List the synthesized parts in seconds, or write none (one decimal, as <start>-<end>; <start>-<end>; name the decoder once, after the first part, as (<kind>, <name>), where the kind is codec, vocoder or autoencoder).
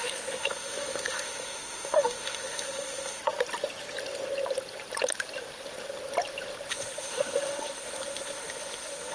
0.0-3.2 (autoencoder, DAC-VAE); 6.7-9.1